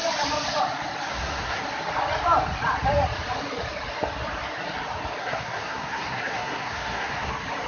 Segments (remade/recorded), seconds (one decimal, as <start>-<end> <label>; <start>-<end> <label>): 0.0-1.1 recorded; 1.1-1.6 remade; 1.6-5.2 recorded; 5.2-7.3 remade; 7.3-7.7 recorded